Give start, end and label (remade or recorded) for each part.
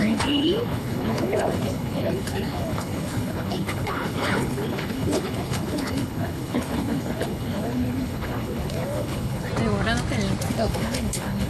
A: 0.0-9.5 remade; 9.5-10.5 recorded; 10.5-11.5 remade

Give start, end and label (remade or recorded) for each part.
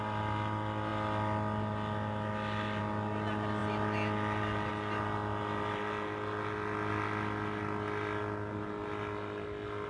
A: 0.0-9.9 recorded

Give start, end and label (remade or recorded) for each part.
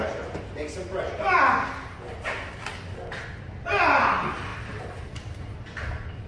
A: 0.0-6.3 recorded